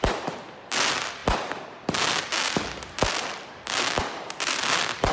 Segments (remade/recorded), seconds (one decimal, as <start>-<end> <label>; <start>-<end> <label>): 0.0-5.1 recorded